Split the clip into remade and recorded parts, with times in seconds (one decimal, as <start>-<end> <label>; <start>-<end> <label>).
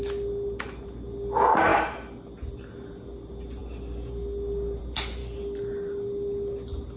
0.0-7.0 recorded